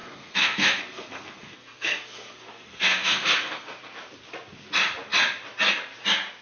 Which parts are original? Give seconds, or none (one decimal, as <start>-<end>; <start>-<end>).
3.8-6.4